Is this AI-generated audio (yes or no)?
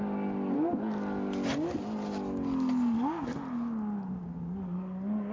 no